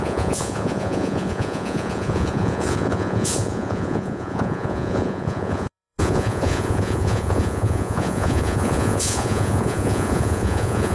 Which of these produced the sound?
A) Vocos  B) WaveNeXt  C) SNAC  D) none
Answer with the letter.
A